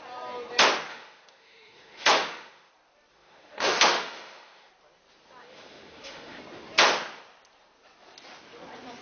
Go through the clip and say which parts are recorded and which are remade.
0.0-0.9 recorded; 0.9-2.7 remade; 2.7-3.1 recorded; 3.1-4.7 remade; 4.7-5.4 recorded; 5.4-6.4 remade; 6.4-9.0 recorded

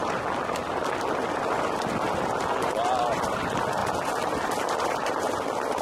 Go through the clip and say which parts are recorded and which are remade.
0.0-5.8 recorded

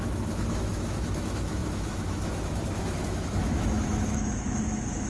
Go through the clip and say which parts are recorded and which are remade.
0.0-5.1 remade

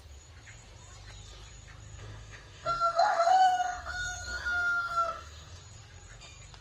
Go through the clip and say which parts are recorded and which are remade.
0.0-2.0 recorded; 2.0-5.6 remade; 5.6-6.6 recorded

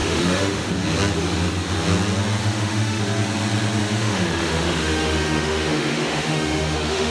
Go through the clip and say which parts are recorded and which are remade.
0.0-0.7 remade; 0.7-2.4 recorded; 2.4-3.0 remade; 3.0-3.8 recorded; 3.8-7.1 remade

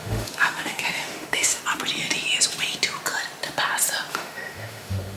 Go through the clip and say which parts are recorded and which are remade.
0.0-1.6 remade; 1.6-4.1 recorded; 4.1-5.2 remade